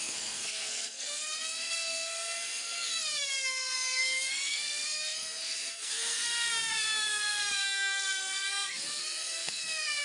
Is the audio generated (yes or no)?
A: yes